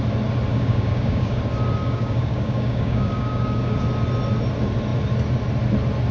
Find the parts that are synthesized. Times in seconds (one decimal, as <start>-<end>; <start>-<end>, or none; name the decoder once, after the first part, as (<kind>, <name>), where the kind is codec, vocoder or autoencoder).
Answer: 0.5-1.4 (codec, DAC); 1.8-3.8